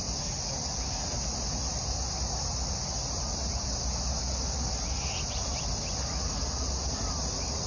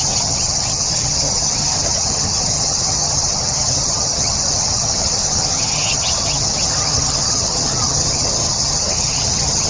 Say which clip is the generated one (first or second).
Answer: second